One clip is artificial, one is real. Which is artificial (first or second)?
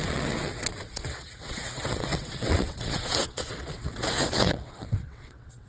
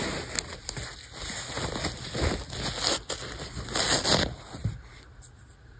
first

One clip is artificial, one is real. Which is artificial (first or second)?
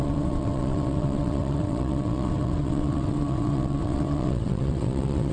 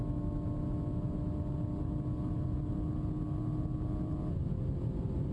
first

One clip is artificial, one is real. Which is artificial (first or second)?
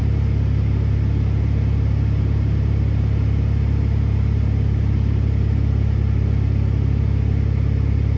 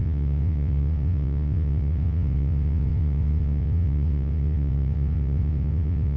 second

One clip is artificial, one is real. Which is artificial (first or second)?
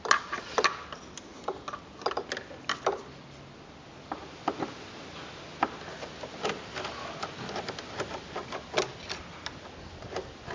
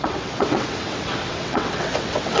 second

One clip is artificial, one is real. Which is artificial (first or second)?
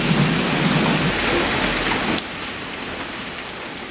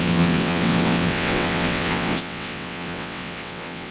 second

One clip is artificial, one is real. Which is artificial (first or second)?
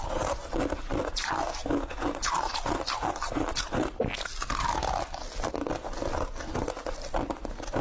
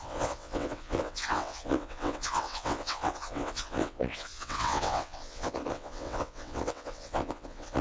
second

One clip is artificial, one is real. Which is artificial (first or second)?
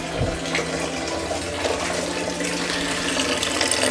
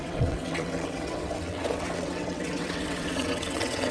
second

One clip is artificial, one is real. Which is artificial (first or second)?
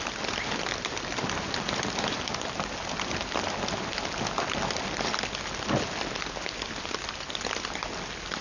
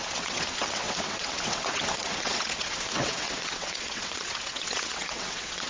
second